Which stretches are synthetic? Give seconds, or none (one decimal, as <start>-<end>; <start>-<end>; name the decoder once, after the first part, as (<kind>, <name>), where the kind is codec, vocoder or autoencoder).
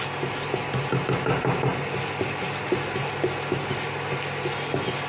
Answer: none